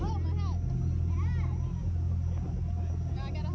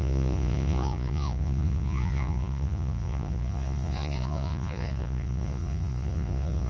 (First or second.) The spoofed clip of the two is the second